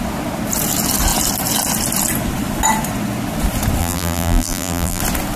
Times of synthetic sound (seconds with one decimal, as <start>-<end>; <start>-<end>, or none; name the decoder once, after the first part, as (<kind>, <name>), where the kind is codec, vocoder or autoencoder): 3.8-5.0 (vocoder, BigVGAN v2)